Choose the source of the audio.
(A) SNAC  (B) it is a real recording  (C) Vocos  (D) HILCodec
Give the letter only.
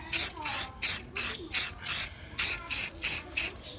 B